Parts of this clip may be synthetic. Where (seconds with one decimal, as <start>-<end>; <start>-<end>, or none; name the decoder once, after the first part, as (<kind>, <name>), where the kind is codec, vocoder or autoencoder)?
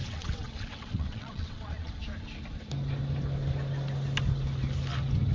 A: 0.0-1.9 (vocoder, WaveNeXt)